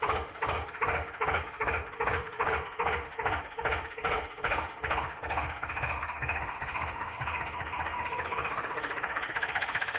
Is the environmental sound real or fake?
fake